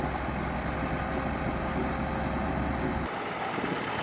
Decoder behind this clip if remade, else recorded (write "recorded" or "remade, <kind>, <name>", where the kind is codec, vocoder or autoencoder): recorded